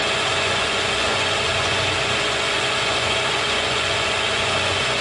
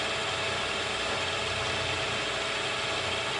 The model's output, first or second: first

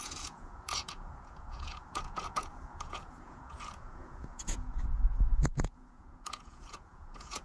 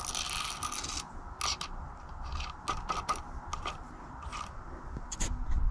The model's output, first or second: first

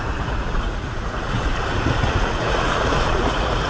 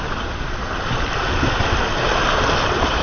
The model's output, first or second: first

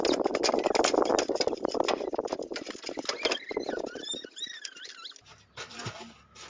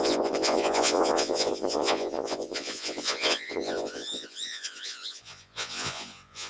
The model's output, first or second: second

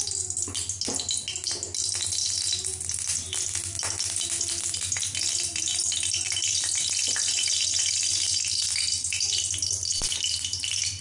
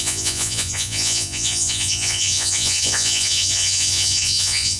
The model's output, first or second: second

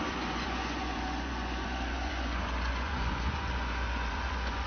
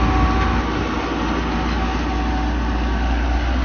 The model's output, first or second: first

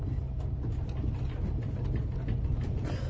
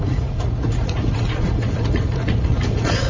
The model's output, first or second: second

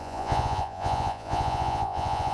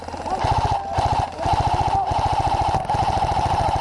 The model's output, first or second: first